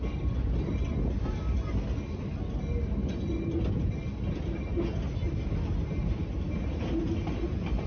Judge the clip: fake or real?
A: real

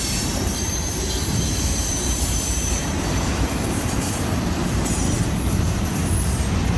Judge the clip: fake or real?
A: fake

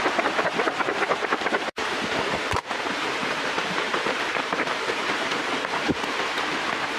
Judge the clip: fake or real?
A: fake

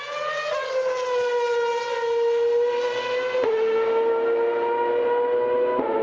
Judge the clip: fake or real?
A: real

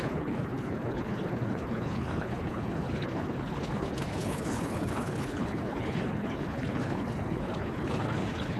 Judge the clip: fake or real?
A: fake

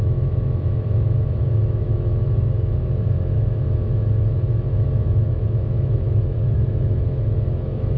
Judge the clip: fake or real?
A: fake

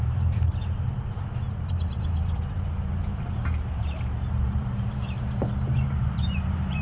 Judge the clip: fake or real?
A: fake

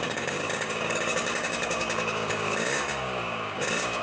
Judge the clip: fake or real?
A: fake